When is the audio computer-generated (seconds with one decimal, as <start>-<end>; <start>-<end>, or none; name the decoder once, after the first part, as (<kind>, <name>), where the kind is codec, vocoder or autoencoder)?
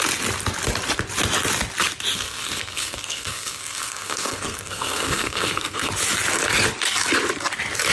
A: 2.1-5.9 (codec, SNAC)